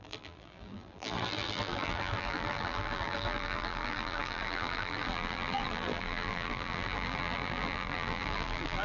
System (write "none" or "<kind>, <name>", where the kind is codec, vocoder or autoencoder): vocoder, BigVGAN v2